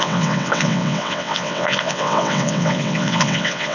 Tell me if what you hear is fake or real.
fake